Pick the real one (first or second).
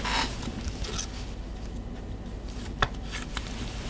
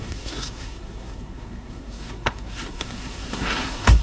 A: first